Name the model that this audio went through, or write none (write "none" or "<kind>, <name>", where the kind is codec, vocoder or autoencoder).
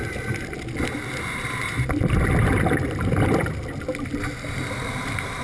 none